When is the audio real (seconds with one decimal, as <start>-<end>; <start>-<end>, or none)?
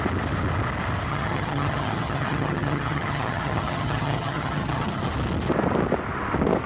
0.0-1.1; 5.1-6.7